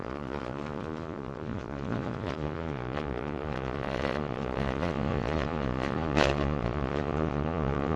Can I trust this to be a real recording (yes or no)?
no